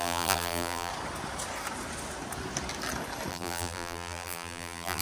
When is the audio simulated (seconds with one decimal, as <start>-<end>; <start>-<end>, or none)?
0.0-0.9; 3.3-5.0